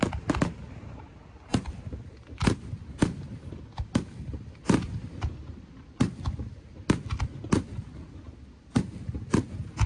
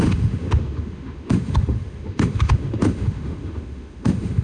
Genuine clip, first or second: first